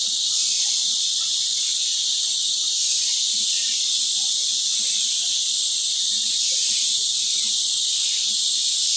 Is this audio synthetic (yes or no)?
no